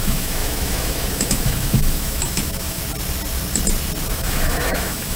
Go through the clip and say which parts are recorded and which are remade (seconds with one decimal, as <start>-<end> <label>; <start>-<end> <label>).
0.0-2.8 remade; 2.8-4.1 recorded; 4.1-5.2 remade